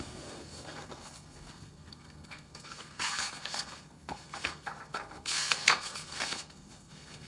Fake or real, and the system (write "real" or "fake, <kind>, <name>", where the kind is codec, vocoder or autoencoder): fake, codec, SNAC